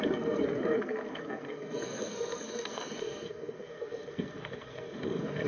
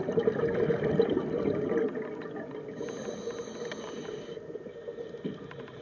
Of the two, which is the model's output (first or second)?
first